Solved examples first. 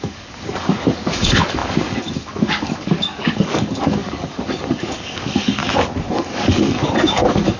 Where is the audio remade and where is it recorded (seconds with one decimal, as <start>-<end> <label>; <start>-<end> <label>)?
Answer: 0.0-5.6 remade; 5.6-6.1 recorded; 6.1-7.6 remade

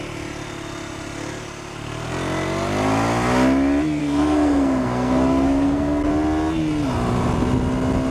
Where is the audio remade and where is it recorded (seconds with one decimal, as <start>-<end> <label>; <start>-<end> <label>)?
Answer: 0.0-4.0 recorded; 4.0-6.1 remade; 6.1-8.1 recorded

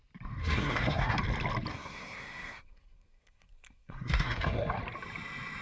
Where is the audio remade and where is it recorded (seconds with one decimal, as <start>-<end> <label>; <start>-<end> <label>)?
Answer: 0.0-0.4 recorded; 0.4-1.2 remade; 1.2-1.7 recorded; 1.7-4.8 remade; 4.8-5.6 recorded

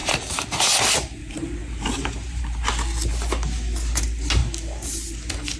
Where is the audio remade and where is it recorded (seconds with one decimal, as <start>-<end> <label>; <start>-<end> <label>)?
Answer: 0.0-0.5 remade; 0.5-1.2 recorded; 1.2-2.4 remade; 2.4-5.6 recorded

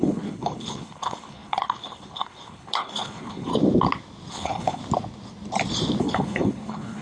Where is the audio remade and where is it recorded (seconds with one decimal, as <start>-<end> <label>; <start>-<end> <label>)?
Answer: 0.0-3.5 remade; 3.5-4.3 recorded; 4.3-4.8 remade; 4.8-6.0 recorded; 6.0-7.0 remade

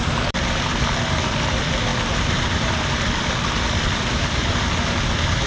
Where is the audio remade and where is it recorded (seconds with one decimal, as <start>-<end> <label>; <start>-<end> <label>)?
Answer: 0.0-5.5 remade